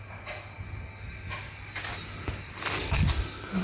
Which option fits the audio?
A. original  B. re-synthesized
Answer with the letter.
A